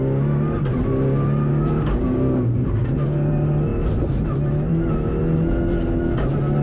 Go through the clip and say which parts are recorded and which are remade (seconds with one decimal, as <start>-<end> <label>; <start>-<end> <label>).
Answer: 0.0-1.5 recorded; 1.5-3.3 remade; 3.3-6.6 recorded